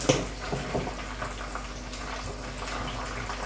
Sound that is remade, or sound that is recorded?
recorded